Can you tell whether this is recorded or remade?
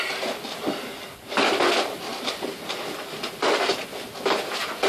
recorded